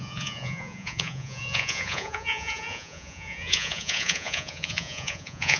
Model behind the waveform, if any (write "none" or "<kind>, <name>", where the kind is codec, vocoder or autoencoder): vocoder, Vocos